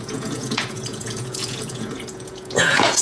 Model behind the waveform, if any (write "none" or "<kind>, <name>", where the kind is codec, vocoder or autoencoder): vocoder, Vocos